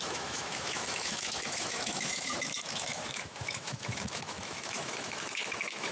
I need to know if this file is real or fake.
fake